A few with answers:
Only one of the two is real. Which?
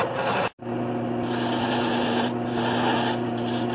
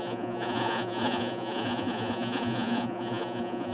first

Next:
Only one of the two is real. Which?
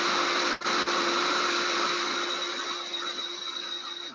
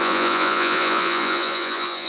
first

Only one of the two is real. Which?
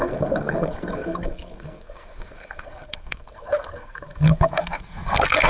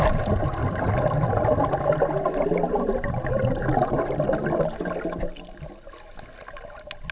second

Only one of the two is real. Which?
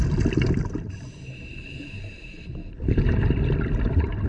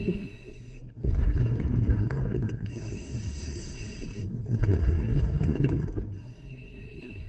first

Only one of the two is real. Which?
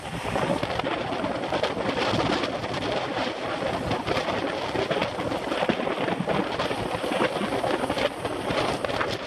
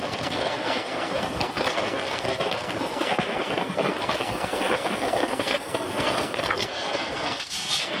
first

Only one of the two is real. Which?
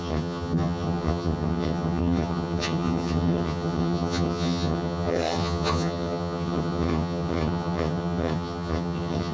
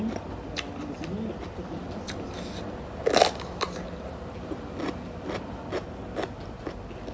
second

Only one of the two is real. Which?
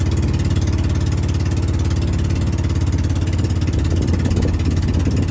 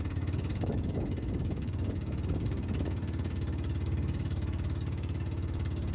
first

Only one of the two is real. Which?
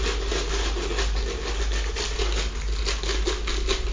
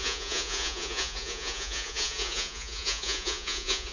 first